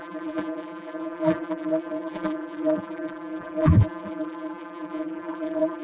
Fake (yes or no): yes